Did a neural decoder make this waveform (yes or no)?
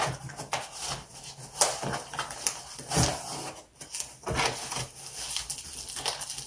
no